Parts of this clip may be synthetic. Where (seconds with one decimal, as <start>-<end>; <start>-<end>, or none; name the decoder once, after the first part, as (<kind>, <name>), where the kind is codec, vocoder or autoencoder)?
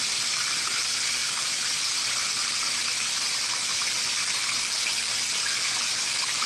none